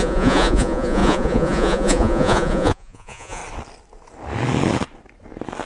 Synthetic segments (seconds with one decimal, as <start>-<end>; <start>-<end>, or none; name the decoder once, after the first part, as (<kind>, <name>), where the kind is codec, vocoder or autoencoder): 0.0-3.4 (vocoder, Vocos)